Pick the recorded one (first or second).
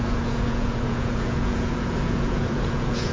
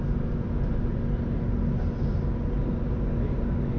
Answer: second